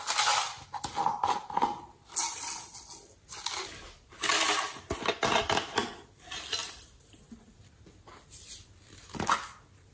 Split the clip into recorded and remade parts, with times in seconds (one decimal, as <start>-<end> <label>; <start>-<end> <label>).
0.0-9.9 recorded

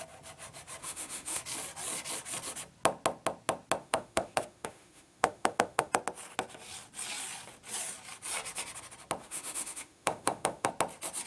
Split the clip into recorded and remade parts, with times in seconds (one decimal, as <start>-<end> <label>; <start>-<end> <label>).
0.0-0.8 recorded; 0.8-1.4 remade; 1.4-3.8 recorded; 3.8-5.9 remade; 5.9-9.2 recorded; 9.2-10.7 remade; 10.7-11.3 recorded

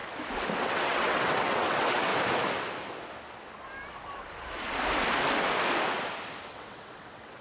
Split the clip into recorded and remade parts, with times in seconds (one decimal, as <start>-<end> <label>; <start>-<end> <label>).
0.0-0.6 recorded; 0.6-2.1 remade; 2.1-6.5 recorded; 6.5-7.4 remade

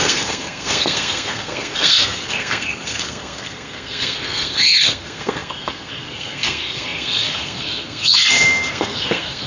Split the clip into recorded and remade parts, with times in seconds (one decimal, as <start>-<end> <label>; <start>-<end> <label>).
0.0-9.5 remade

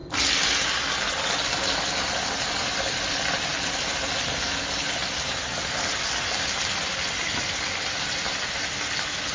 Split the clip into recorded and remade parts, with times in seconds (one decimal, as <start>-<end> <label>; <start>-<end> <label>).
0.0-9.3 recorded

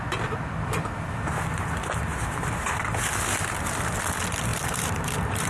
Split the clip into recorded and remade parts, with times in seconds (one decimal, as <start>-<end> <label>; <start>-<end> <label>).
0.0-4.5 recorded; 4.5-5.5 remade